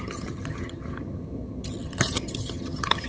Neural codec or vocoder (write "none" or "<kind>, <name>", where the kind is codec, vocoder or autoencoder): vocoder, HiFi-GAN